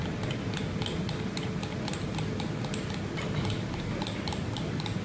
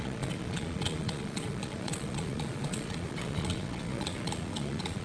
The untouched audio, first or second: first